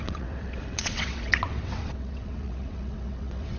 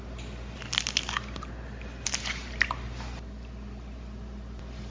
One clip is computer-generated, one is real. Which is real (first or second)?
second